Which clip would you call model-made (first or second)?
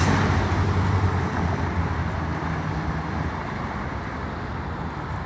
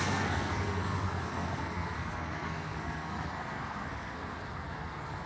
second